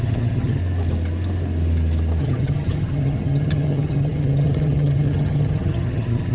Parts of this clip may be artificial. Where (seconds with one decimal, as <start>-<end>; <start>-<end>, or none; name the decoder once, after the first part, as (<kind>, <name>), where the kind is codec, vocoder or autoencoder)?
0.0-0.6 (vocoder, HiFi-GAN); 2.2-6.3